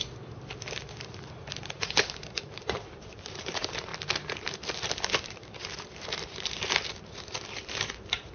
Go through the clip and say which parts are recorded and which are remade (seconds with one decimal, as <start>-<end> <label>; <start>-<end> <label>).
0.0-3.9 remade; 3.9-5.3 recorded; 5.3-8.3 remade